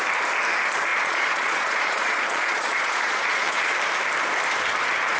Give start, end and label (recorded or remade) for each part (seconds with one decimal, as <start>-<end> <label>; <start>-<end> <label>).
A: 0.0-0.9 recorded; 0.9-3.6 remade; 3.6-5.2 recorded